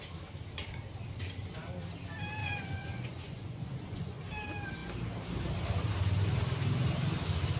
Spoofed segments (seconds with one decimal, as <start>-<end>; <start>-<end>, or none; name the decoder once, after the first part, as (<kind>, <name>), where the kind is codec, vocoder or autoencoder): 2.4-4.2 (vocoder, Vocos)